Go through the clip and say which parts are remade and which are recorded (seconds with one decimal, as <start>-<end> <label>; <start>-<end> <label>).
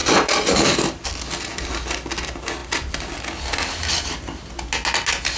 0.0-1.1 remade; 1.1-5.4 recorded